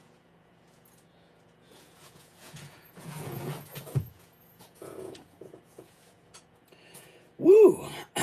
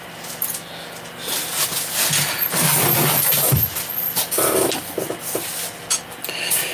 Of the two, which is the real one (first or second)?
second